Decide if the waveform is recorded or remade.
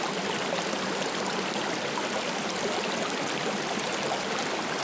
recorded